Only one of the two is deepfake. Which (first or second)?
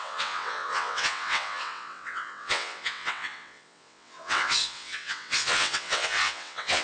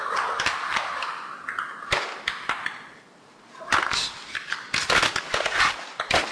first